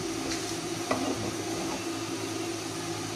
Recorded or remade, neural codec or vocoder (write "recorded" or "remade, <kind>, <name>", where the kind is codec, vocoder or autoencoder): recorded